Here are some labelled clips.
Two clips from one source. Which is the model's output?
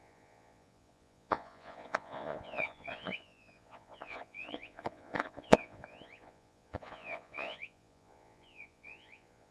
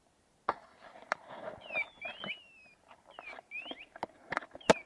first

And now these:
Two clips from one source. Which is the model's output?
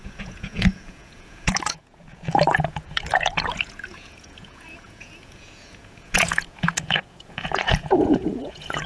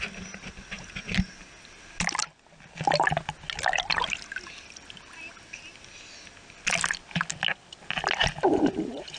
first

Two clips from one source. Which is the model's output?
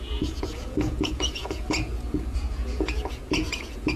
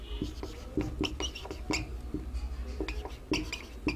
first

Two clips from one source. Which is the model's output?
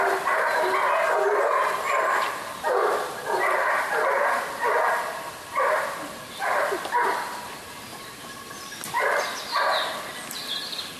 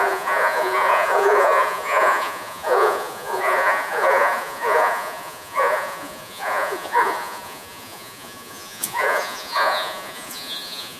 second